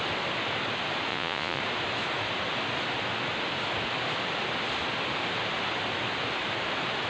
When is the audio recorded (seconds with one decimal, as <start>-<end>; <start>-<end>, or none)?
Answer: 0.0-1.1; 1.6-7.1